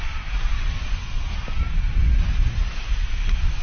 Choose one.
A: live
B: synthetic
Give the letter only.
A